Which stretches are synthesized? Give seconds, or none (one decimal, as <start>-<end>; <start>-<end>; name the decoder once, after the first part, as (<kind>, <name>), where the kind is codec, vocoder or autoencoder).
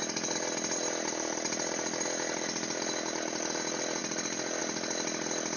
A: none